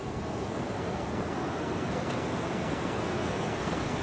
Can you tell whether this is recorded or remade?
remade